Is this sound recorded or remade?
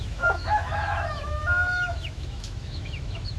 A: remade